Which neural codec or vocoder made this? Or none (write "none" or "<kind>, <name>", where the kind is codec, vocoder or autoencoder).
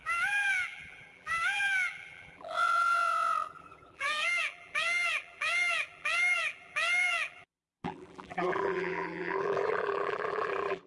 vocoder, BigVGAN v2